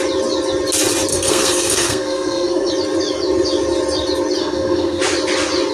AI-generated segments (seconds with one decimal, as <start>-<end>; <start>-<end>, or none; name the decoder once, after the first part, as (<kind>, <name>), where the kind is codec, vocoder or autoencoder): 1.1-2.7 (codec, SNAC); 4.4-5.0